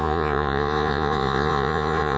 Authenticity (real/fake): fake